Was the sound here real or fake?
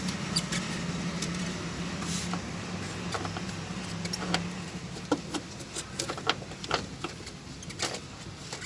real